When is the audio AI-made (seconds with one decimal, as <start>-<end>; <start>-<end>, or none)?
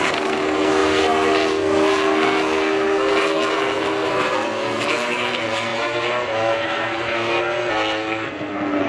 0.0-8.9